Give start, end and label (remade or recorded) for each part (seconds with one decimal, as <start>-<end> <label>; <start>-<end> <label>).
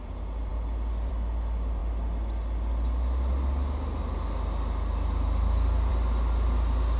0.0-7.0 recorded